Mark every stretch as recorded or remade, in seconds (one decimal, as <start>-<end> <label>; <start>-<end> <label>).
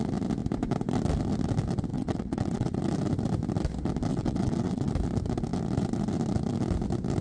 0.0-1.9 recorded; 1.9-2.8 remade; 2.8-4.1 recorded; 4.1-4.9 remade; 4.9-7.2 recorded